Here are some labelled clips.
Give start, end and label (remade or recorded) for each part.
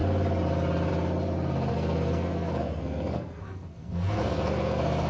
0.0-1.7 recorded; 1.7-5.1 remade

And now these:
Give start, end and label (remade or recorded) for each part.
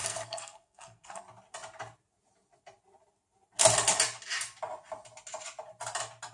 0.0-1.2 remade; 1.2-6.3 recorded